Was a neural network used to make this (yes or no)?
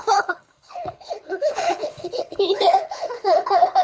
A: yes